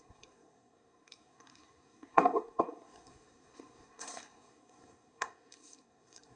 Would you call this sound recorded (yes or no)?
no